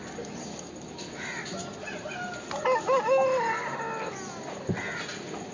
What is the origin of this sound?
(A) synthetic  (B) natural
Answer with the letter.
B